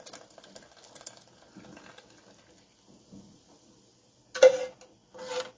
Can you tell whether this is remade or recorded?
recorded